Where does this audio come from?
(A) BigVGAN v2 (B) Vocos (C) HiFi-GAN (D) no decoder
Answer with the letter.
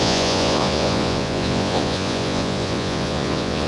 B